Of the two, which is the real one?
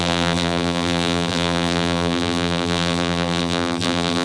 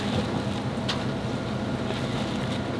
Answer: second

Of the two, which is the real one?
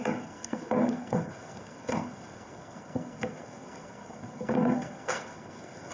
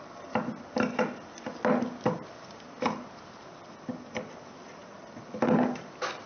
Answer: second